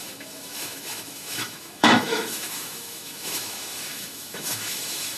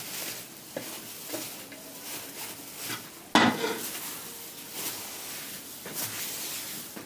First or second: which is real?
second